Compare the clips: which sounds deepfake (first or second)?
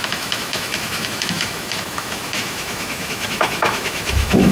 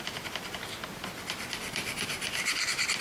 first